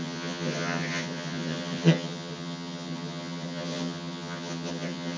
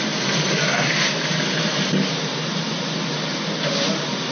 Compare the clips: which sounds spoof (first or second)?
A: first